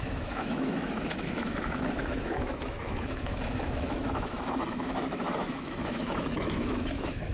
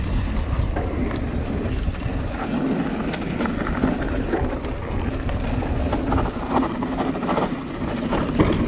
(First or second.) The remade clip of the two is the first